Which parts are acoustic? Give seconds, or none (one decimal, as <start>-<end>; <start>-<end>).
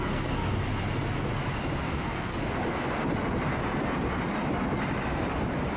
0.7-1.9; 2.3-5.8